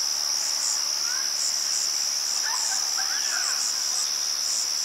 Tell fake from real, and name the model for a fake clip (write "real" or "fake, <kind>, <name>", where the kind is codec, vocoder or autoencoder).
real